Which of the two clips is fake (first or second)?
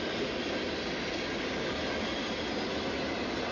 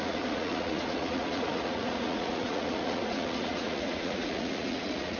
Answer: second